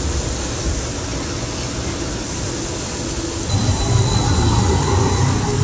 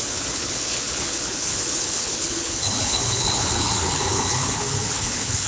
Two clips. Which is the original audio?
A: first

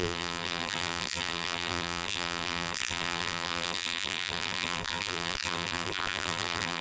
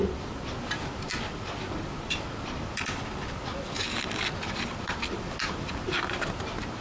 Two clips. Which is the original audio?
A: second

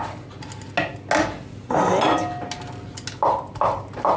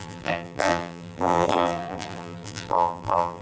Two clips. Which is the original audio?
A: first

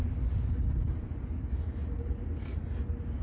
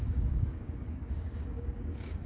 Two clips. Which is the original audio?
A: first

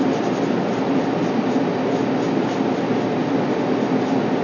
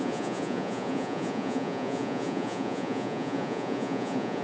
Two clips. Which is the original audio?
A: first